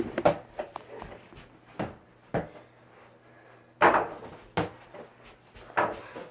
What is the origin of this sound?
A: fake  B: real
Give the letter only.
B